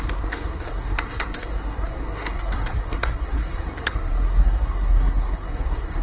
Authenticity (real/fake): fake